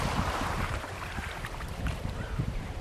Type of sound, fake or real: fake